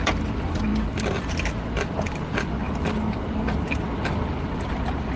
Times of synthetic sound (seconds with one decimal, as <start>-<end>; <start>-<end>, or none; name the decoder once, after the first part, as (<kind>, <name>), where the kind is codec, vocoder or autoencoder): none